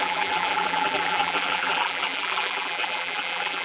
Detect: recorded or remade remade